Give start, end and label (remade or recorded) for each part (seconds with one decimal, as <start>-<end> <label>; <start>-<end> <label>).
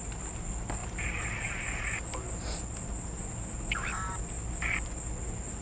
0.0-5.6 recorded